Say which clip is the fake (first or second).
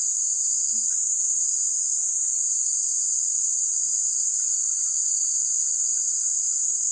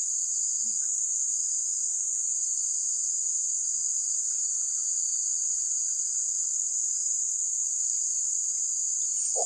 first